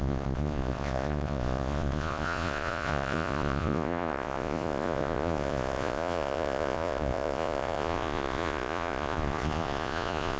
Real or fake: fake